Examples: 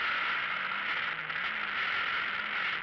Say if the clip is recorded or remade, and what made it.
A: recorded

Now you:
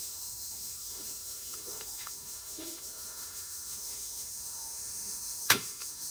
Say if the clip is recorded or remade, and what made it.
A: remade, autoencoder, DAC-VAE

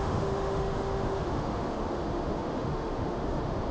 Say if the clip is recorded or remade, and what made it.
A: remade, autoencoder, DAC-VAE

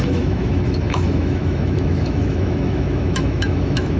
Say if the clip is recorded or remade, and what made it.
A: remade, autoencoder, DAC-VAE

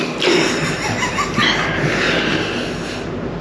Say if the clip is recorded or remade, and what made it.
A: recorded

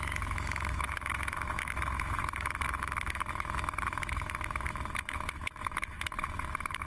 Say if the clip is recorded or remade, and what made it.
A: remade, autoencoder, DAC-VAE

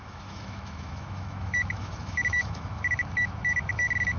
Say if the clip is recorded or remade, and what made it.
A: remade, autoencoder, DAC-VAE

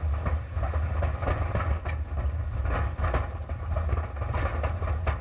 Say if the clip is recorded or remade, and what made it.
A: recorded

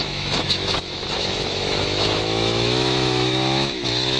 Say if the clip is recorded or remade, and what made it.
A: remade, autoencoder, DAC-VAE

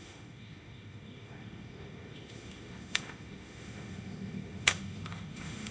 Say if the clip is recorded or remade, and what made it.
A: remade, autoencoder, DAC-VAE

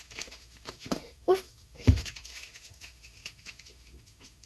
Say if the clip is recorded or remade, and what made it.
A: remade, autoencoder, DAC-VAE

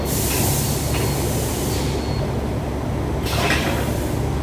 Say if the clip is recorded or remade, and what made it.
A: recorded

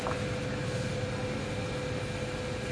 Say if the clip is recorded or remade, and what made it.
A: recorded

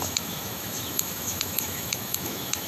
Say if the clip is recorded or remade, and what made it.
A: remade, autoencoder, DAC-VAE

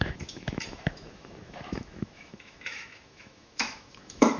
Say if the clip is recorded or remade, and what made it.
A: remade, autoencoder, DAC-VAE